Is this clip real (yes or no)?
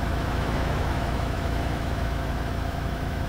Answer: no